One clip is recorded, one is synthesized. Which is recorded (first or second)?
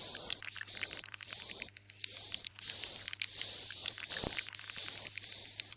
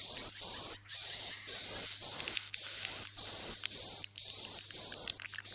second